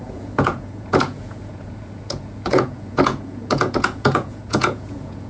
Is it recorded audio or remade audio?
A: remade